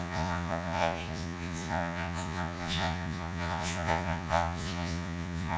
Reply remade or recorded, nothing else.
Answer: remade